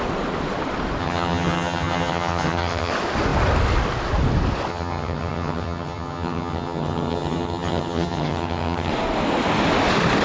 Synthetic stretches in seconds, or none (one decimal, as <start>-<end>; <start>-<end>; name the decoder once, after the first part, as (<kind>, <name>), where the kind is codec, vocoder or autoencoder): 1.0-2.9 (vocoder, HiFi-GAN); 4.7-8.9